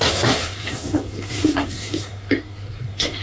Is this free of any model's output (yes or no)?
no